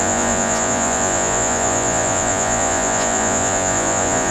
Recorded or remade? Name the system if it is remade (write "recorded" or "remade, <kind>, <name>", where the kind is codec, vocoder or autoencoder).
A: remade, vocoder, Vocos